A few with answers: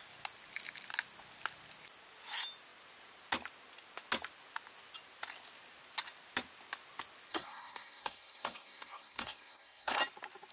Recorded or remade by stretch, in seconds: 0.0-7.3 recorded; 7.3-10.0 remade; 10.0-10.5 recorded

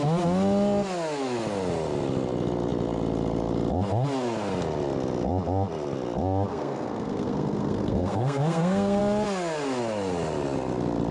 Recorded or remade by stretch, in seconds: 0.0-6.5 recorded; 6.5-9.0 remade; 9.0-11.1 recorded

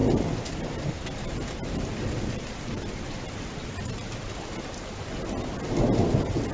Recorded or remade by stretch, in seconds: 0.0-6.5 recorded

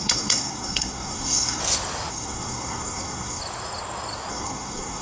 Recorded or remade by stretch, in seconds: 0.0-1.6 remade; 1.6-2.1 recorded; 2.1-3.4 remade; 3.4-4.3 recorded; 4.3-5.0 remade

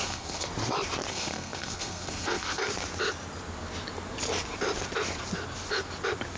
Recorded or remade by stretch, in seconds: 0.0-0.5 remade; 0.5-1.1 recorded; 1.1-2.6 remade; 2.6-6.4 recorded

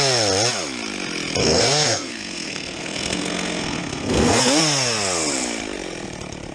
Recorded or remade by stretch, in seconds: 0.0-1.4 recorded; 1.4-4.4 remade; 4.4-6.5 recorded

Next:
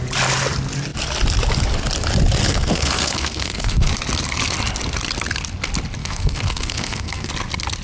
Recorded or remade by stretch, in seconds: 0.0-2.4 recorded; 2.4-3.9 remade; 3.9-6.0 recorded; 6.0-7.3 remade; 7.3-7.8 recorded